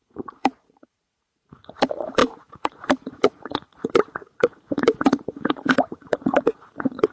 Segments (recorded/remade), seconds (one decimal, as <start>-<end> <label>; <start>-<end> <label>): 0.0-7.1 remade